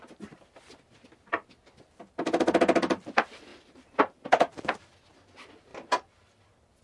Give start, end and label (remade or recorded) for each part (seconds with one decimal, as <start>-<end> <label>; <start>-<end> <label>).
0.0-3.5 recorded; 3.5-4.8 remade; 4.8-6.8 recorded